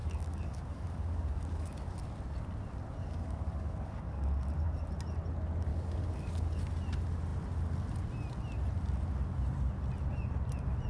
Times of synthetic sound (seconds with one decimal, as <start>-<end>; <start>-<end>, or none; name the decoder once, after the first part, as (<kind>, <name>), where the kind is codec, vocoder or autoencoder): 0.0-1.9 (codec, DAC); 3.0-4.9; 5.7-6.7